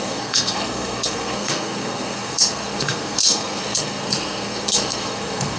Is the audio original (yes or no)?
no